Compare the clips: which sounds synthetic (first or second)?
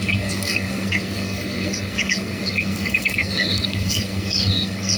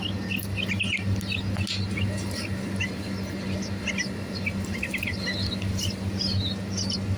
first